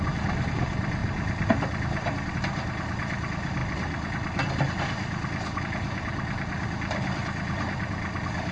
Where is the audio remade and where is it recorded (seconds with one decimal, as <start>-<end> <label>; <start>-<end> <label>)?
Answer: 0.0-8.5 recorded